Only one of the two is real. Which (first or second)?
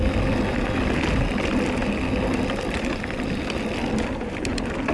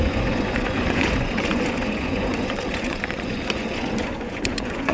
first